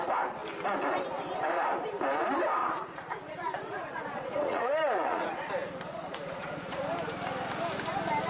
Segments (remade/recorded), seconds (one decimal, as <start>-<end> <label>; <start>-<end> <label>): 0.0-2.6 recorded; 2.6-5.5 remade; 5.5-5.9 recorded; 5.9-6.8 remade; 6.8-8.3 recorded